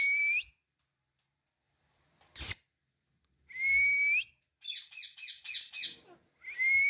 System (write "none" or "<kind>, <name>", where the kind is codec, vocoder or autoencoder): none